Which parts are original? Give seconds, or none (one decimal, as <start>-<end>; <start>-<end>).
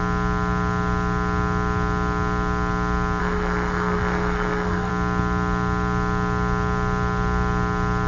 0.0-3.2; 4.9-8.1